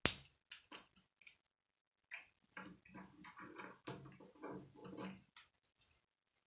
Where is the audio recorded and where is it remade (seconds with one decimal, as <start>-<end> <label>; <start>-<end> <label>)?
0.0-6.5 recorded

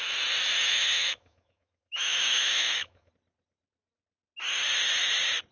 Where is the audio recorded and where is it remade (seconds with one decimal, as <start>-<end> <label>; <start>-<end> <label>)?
0.0-0.7 recorded; 0.7-3.1 remade; 3.1-5.5 recorded